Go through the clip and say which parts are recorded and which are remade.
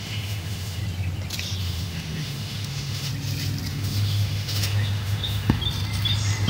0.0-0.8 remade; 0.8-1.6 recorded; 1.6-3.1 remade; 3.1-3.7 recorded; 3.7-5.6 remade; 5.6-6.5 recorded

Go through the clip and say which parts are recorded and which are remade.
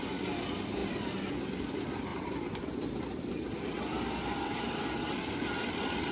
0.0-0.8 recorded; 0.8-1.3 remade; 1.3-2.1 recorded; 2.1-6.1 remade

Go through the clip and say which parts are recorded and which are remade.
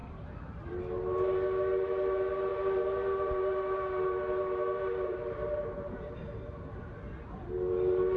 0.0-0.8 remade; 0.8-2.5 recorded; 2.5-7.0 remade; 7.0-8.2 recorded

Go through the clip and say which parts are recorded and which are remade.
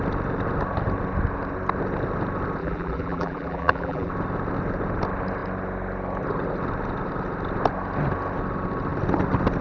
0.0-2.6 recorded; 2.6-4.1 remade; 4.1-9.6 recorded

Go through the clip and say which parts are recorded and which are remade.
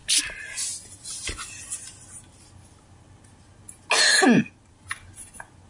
0.0-5.7 recorded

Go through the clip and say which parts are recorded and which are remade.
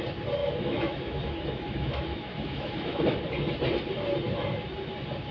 0.0-0.4 recorded; 0.4-3.0 remade; 3.0-5.3 recorded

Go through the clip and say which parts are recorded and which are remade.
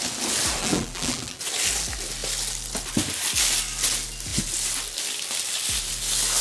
0.0-0.6 recorded; 0.6-1.4 remade; 1.4-6.4 recorded